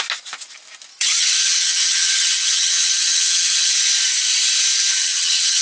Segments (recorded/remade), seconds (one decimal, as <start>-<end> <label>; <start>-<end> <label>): 0.0-0.9 recorded; 0.9-3.7 remade; 3.7-5.0 recorded; 5.0-5.6 remade